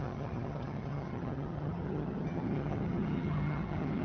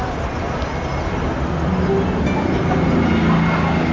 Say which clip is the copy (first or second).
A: first